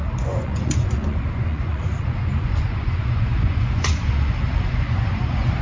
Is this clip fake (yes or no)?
yes